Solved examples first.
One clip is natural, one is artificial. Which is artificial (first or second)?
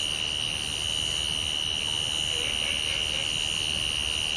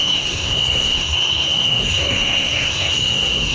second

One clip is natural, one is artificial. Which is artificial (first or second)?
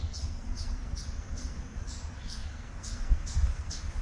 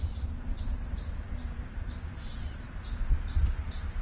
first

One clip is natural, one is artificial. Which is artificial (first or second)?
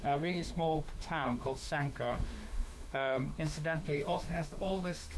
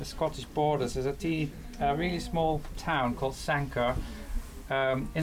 first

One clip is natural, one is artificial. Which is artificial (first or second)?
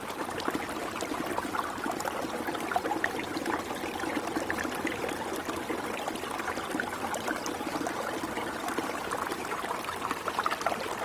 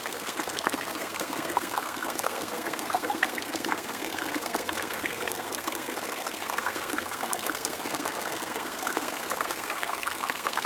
second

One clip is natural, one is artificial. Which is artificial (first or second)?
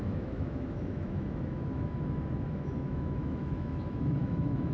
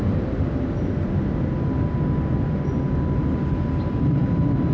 first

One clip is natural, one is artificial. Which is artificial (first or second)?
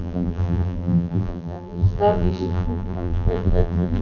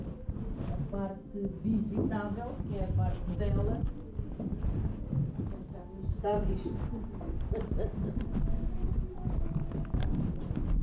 first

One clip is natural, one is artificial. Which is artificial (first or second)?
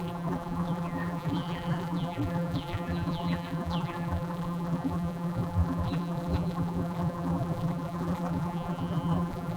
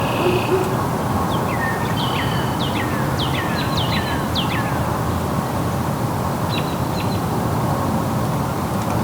first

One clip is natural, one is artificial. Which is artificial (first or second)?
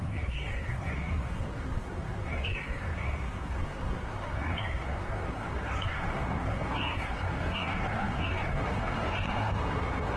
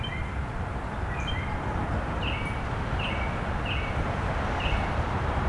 first